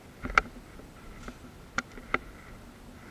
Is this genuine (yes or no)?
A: yes